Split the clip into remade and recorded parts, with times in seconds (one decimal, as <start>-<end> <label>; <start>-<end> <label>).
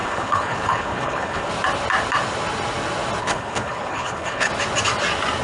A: 0.0-1.5 remade; 1.5-3.2 recorded; 3.2-4.5 remade; 4.5-5.4 recorded